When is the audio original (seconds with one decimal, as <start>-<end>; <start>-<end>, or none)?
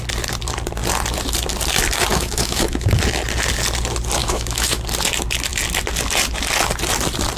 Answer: 0.0-2.1; 3.0-4.2; 4.8-7.4